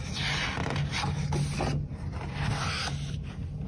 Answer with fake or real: real